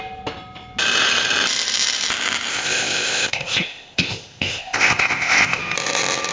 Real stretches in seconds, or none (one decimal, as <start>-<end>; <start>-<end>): 0.0-2.5; 5.6-6.3